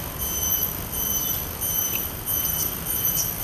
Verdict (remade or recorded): remade